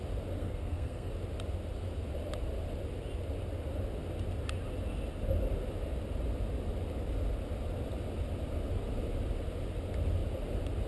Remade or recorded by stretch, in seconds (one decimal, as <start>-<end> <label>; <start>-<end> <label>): 0.0-0.4 recorded; 0.4-1.1 remade; 1.1-10.9 recorded